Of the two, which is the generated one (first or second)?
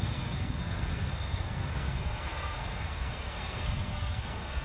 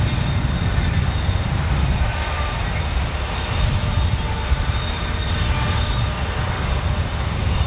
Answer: first